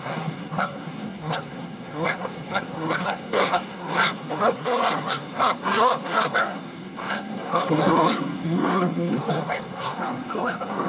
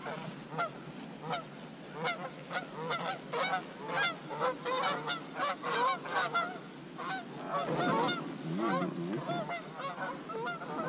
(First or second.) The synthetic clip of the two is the first